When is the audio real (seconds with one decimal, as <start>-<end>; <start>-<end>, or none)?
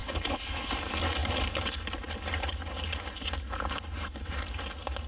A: 0.7-5.1